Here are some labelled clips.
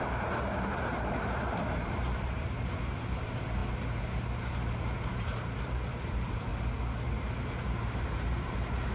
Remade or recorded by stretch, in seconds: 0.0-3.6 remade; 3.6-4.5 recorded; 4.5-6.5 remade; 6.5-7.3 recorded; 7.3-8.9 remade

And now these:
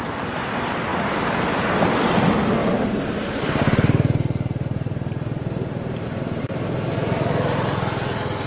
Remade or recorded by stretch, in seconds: 0.0-0.9 recorded; 0.9-1.5 remade; 1.5-2.6 recorded; 2.6-6.4 remade; 6.4-8.5 recorded